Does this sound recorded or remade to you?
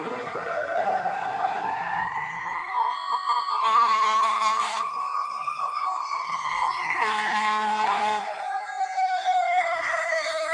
remade